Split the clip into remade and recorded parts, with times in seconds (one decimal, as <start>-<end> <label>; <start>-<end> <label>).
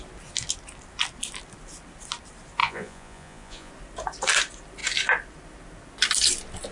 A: 0.0-2.6 recorded; 2.6-3.7 remade; 3.7-6.7 recorded